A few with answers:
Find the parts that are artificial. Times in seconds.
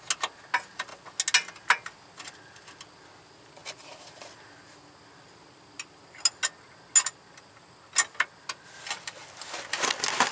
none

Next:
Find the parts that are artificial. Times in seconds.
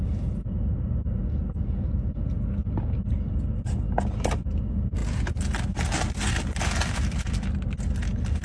none